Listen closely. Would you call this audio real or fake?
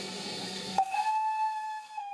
fake